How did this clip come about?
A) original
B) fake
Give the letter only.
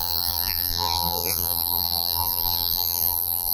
B